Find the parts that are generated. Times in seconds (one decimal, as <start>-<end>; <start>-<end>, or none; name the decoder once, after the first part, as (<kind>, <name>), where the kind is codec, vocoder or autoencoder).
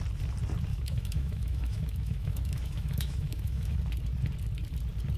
0.7-3.8 (autoencoder, DAC-VAE)